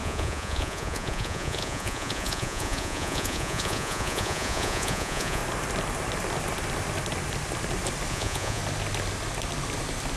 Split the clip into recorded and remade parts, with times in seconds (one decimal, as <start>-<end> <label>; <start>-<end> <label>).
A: 0.0-5.4 remade; 5.4-8.1 recorded; 8.1-8.6 remade; 8.6-10.2 recorded